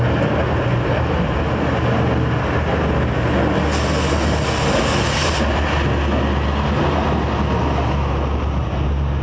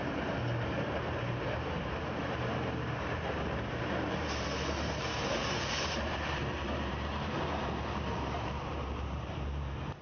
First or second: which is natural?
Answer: first